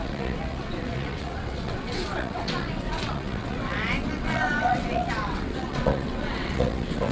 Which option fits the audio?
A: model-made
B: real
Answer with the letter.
A